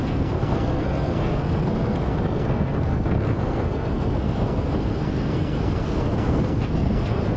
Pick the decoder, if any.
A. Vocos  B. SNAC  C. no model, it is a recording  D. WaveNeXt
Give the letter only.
B